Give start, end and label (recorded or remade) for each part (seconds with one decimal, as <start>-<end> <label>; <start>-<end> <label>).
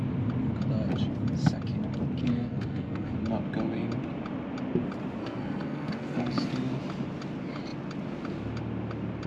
0.0-2.2 recorded; 2.2-3.1 remade; 3.1-5.2 recorded; 5.2-6.5 remade; 6.5-9.3 recorded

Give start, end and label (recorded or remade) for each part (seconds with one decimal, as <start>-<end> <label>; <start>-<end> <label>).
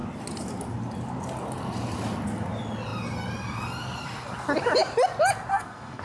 0.0-5.5 recorded; 5.5-6.0 remade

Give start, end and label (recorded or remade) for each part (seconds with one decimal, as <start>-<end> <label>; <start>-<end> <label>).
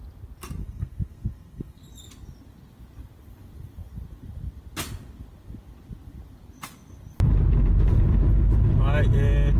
0.0-0.6 recorded; 0.6-1.8 remade; 1.8-9.6 recorded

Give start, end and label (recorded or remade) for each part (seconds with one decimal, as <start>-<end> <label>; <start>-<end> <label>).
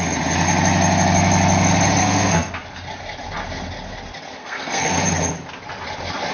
0.0-2.0 recorded; 2.0-2.5 remade; 2.5-4.4 recorded; 4.4-5.0 remade; 5.0-6.3 recorded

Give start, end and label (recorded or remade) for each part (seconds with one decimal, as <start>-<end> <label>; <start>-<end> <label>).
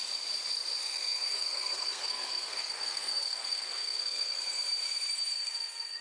0.0-0.8 recorded; 0.8-4.4 remade; 4.4-5.3 recorded; 5.3-6.0 remade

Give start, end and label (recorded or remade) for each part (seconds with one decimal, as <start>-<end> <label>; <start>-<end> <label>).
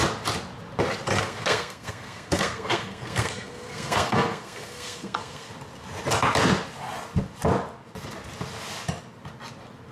0.0-1.2 recorded; 1.2-5.5 remade; 5.5-9.9 recorded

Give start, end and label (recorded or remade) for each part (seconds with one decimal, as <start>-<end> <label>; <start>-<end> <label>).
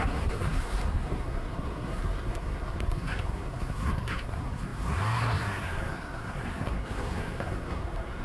0.0-8.2 remade